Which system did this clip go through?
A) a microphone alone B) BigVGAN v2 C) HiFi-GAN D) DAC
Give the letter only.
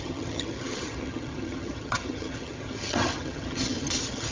C